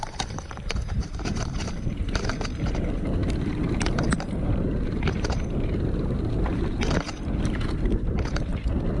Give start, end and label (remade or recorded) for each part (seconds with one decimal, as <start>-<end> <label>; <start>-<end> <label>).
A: 0.0-8.5 remade; 8.5-9.0 recorded